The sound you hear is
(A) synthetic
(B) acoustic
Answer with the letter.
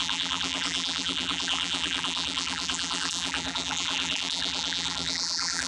A